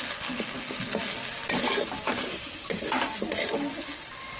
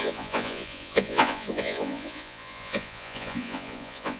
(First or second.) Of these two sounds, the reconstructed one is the second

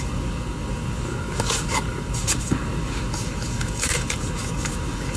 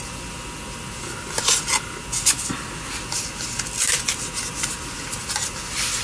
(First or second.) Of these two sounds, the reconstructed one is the first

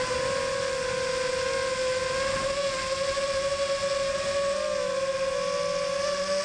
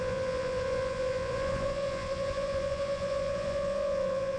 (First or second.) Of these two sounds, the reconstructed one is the second